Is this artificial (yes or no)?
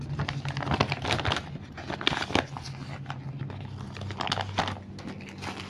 no